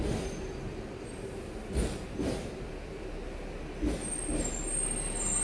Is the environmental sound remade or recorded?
recorded